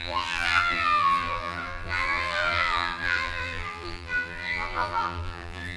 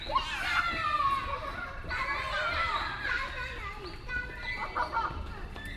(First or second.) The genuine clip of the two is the second